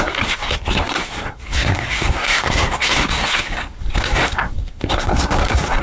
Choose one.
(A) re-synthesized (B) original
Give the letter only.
A